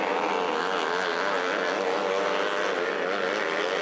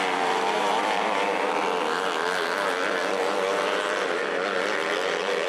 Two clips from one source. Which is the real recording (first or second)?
first